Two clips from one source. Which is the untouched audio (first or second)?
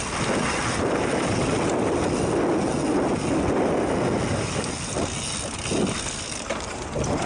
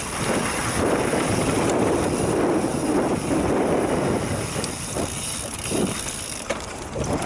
first